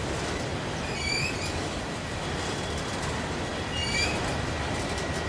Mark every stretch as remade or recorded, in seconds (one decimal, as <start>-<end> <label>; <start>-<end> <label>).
0.0-5.3 recorded